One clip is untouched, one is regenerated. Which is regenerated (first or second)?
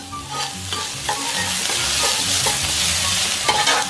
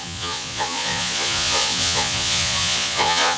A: second